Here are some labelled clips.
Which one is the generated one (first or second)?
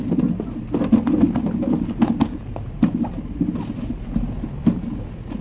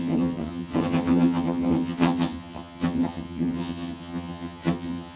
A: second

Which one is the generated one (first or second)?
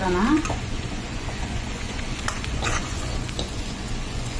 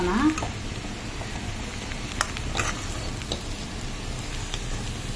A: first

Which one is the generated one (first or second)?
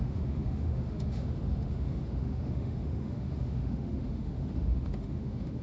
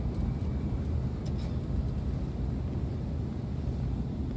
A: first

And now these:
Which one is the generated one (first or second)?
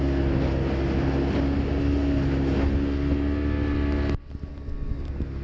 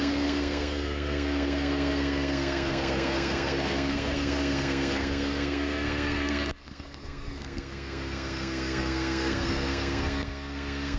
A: second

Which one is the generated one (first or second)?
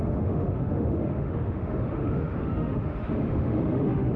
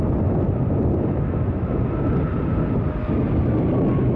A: first